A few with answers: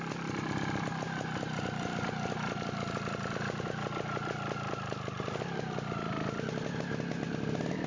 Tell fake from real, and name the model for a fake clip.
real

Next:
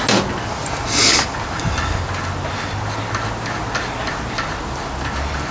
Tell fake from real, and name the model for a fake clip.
real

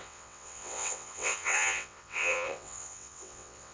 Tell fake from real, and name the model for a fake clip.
fake, vocoder, WaveNeXt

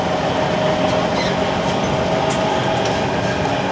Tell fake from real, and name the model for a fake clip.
real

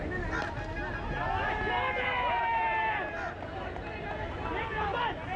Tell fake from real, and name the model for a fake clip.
real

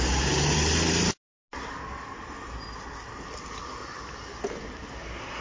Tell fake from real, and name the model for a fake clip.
real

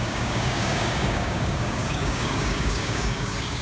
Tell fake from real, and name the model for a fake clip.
fake, codec, DAC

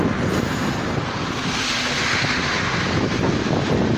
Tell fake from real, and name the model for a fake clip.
real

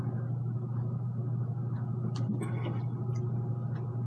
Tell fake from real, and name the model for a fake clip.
real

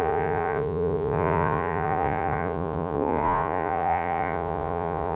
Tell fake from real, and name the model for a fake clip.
fake, vocoder, Vocos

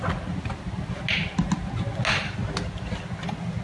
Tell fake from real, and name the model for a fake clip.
real